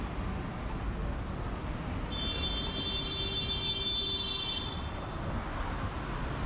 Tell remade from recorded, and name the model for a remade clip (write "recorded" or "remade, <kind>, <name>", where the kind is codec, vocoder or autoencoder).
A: recorded